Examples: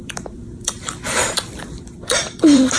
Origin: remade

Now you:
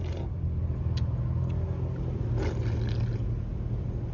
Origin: recorded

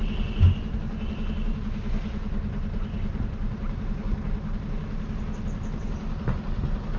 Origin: recorded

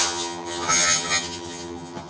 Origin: remade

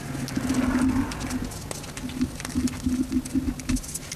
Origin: recorded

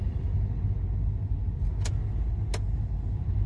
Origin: recorded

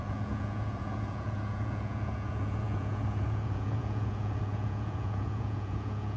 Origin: remade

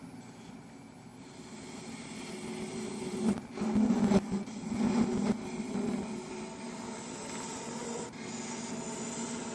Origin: recorded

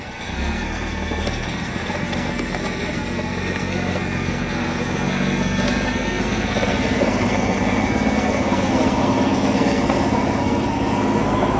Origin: remade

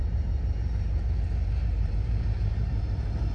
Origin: remade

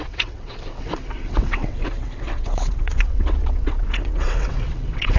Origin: remade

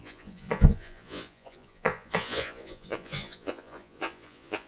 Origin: remade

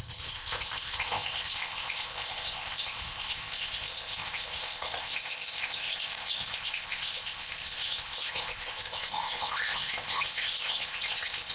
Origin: remade